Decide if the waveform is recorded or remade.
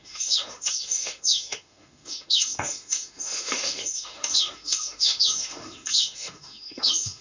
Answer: remade